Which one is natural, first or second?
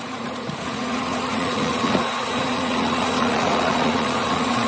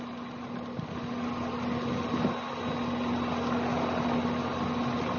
second